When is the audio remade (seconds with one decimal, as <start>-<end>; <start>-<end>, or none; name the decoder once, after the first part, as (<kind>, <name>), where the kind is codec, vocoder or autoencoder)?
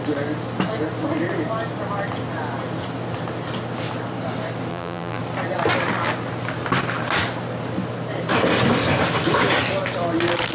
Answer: 4.7-5.2 (vocoder, BigVGAN v2)